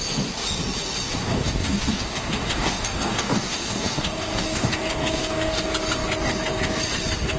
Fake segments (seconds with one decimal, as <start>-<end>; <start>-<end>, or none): 1.2-5.6